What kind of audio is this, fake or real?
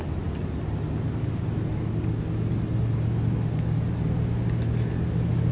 real